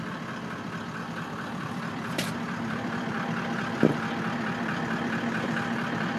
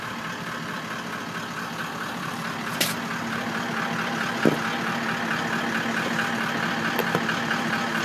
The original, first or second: second